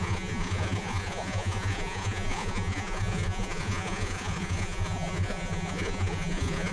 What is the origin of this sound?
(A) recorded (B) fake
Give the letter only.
B